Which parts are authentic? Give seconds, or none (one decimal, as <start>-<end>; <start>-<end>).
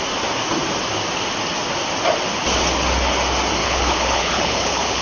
0.0-3.6